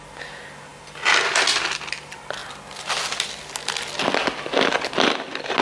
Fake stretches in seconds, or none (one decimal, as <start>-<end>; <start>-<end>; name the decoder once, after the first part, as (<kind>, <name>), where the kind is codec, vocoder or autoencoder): none